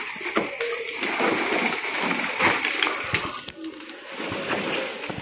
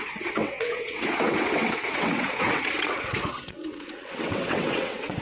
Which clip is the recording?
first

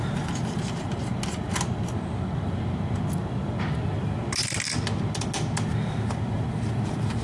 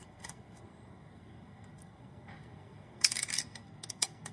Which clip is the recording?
first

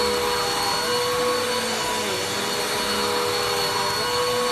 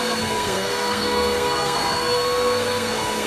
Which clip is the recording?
first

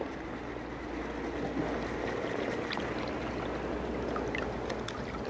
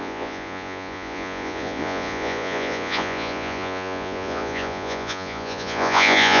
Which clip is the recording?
first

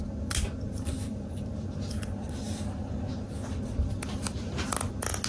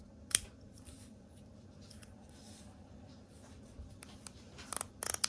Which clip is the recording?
first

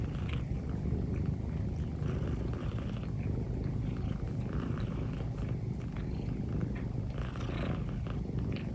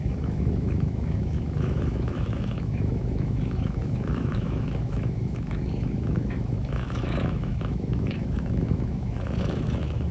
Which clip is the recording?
first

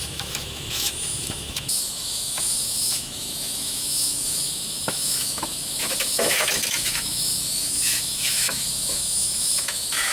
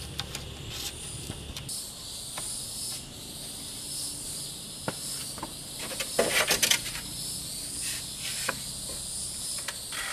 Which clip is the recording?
second